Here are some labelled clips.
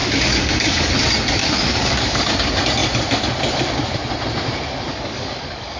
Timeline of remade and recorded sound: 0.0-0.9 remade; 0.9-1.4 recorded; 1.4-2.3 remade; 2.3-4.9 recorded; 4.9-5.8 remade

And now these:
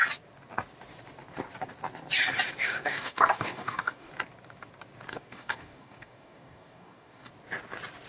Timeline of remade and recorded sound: 0.0-2.6 recorded; 2.6-4.1 remade; 4.1-5.1 recorded; 5.1-7.3 remade; 7.3-8.1 recorded